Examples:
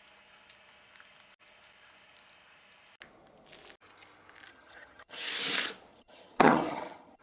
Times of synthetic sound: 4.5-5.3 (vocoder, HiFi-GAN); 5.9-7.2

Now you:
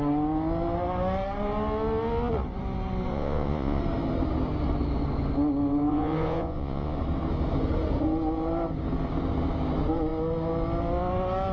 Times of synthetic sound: 3.1-3.8 (vocoder, Vocos); 5.9-7.0

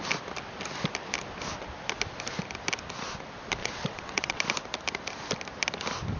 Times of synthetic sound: 3.6-4.4 (vocoder, WaveNeXt)

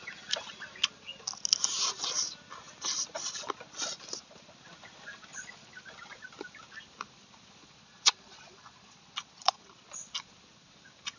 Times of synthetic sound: 5.3-5.8 (vocoder, Vocos); 7.6-9.7

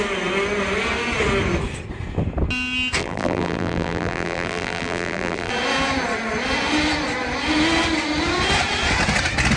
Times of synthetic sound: 3.0-5.5 (vocoder, BigVGAN v2)

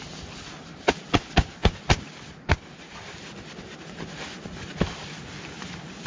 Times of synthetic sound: none